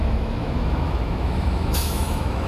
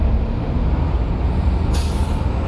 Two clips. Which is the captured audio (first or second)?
second